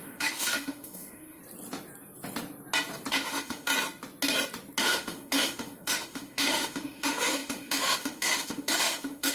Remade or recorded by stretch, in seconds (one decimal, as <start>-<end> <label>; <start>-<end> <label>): 0.0-1.4 remade; 1.4-3.1 recorded; 3.1-3.7 remade; 3.7-4.8 recorded; 4.8-9.3 remade